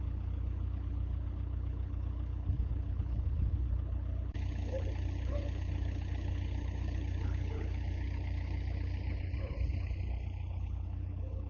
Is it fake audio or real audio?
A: fake